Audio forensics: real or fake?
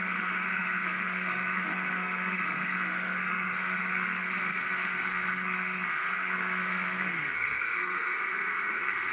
fake